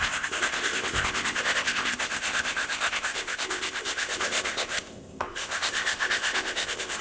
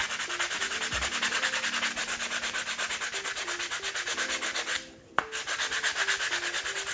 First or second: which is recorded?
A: second